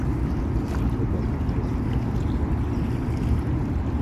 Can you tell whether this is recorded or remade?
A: recorded